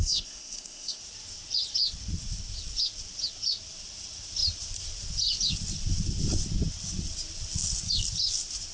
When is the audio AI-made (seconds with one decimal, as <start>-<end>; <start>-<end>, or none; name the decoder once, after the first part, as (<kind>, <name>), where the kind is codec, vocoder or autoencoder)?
0.0-1.0 (codec, ZipCodec)